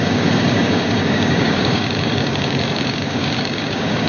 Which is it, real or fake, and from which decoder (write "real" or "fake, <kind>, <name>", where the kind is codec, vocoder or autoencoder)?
fake, codec, DAC